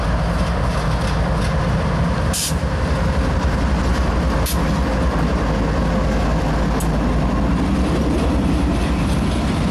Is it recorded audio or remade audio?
recorded